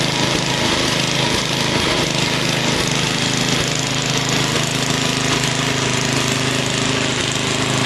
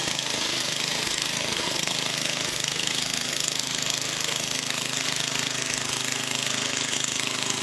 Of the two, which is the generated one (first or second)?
second